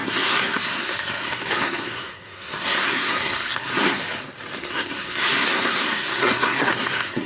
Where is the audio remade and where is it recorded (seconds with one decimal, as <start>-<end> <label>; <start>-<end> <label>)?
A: 0.0-4.0 remade; 4.0-4.6 recorded; 4.6-7.3 remade

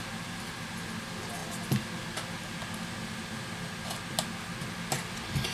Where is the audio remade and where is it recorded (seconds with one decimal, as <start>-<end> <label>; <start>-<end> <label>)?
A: 0.0-5.5 recorded

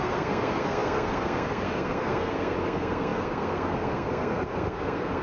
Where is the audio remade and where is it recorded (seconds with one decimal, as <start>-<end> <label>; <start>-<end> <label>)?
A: 0.0-5.2 remade

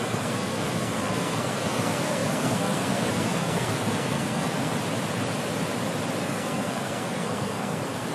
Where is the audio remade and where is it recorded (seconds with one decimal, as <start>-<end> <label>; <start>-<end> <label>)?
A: 0.0-4.7 remade; 4.7-6.2 recorded; 6.2-8.1 remade

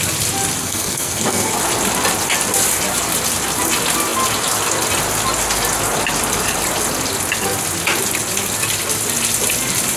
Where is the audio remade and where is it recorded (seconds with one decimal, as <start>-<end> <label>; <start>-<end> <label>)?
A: 0.0-0.6 recorded; 0.6-1.5 remade; 1.5-10.0 recorded

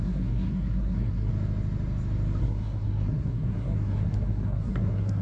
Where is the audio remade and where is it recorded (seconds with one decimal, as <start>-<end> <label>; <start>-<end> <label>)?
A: 0.0-1.3 remade; 1.3-2.4 recorded; 2.4-5.2 remade

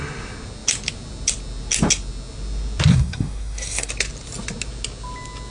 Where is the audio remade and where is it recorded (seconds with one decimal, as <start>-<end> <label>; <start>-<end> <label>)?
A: 0.0-2.9 recorded; 2.9-3.9 remade; 3.9-5.5 recorded

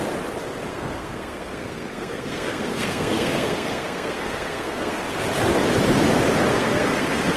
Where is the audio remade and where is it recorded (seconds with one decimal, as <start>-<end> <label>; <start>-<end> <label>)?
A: 0.0-0.7 recorded; 0.7-5.0 remade; 5.0-6.5 recorded; 6.5-7.4 remade